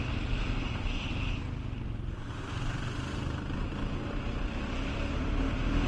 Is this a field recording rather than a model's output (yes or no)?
yes